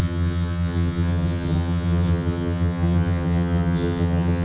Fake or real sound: fake